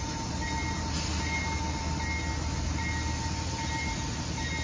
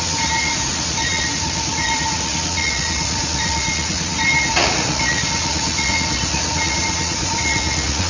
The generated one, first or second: second